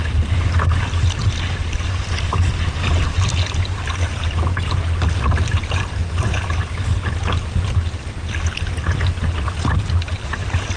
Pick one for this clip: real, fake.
real